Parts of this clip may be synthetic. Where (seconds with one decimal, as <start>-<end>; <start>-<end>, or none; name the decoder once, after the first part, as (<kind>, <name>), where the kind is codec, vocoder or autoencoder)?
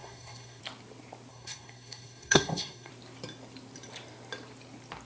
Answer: 0.0-0.6 (codec, SNAC); 1.3-2.9